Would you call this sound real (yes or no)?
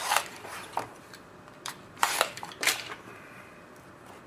no